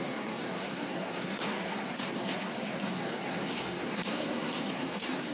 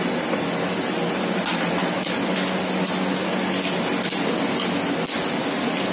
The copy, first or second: first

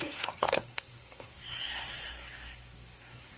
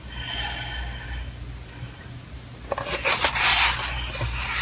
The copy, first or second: first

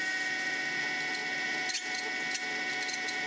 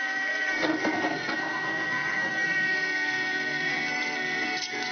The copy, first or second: second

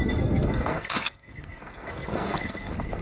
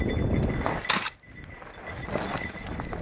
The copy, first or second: first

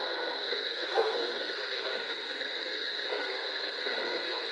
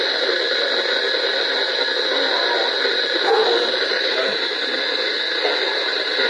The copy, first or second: first